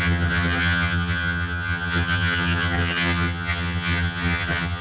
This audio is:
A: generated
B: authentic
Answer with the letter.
A